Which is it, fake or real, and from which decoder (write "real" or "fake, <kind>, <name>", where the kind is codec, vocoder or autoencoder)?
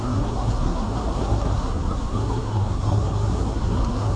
fake, codec, SNAC